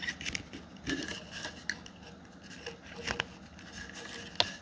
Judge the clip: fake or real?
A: real